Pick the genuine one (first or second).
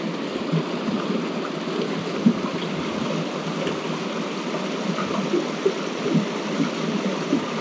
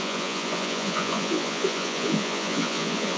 first